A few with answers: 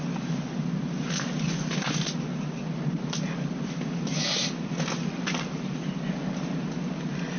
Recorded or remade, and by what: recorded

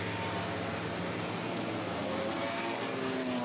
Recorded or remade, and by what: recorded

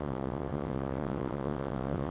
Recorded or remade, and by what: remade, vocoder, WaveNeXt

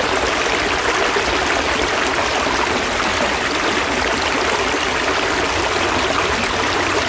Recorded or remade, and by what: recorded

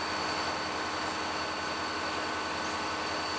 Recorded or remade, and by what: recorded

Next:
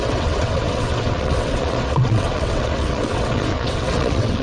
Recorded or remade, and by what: remade, vocoder, WaveNeXt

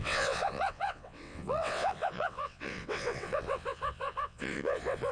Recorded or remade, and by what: remade, vocoder, WaveNeXt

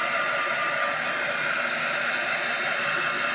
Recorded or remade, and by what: recorded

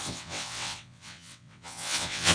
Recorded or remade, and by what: remade, vocoder, WaveNeXt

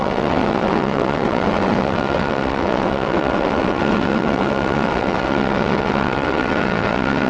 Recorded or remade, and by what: remade, vocoder, WaveNeXt